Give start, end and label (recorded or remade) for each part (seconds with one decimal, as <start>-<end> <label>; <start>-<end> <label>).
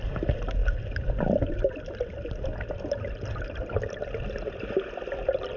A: 0.0-5.6 recorded